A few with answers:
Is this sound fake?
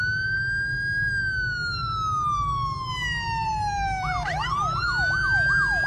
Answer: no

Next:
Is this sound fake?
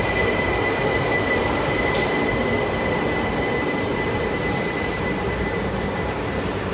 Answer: no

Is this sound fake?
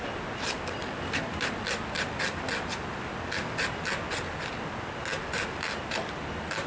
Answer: no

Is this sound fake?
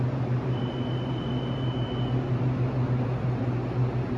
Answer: no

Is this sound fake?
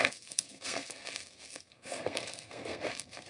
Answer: yes